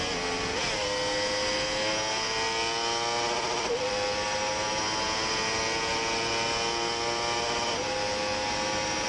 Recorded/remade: recorded